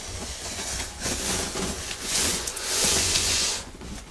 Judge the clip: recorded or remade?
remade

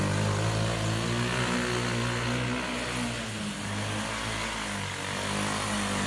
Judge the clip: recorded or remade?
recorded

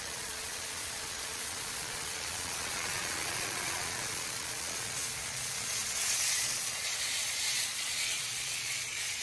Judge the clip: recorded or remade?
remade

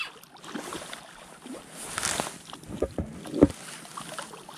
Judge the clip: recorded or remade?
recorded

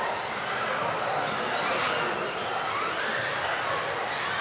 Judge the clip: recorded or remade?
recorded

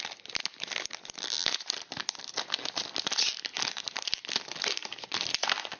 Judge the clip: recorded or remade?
recorded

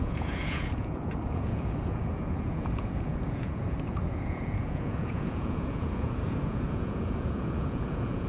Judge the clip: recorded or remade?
remade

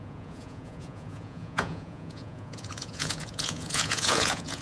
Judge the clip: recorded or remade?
remade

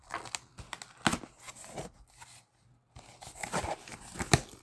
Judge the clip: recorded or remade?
recorded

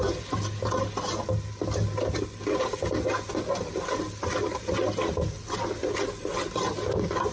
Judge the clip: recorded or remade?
recorded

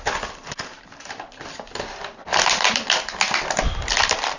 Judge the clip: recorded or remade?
recorded